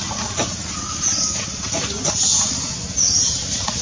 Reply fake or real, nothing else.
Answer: real